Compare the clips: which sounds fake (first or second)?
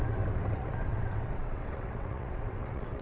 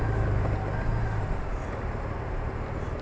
first